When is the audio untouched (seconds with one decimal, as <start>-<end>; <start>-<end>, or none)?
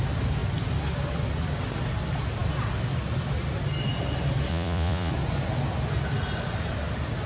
0.0-4.5; 5.1-7.3